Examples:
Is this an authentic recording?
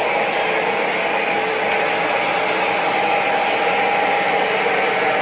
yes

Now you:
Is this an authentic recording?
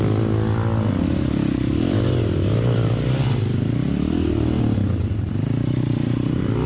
yes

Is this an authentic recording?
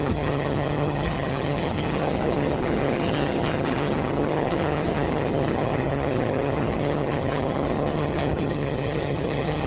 no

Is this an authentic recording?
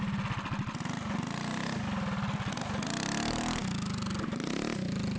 yes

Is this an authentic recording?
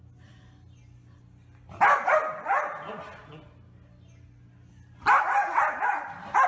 yes